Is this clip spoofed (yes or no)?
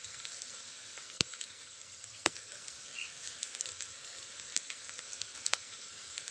yes